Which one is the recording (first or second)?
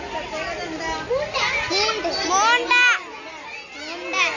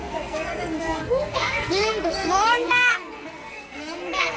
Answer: first